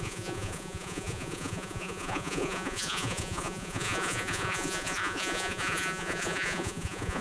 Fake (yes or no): yes